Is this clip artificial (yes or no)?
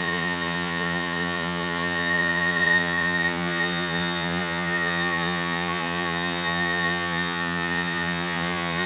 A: yes